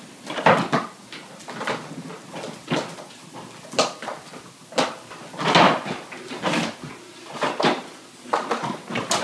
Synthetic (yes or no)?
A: no